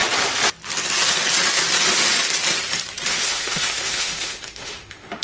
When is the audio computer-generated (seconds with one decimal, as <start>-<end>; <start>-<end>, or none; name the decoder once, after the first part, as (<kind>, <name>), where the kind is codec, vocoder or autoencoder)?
3.1-5.2 (autoencoder, DAC-VAE)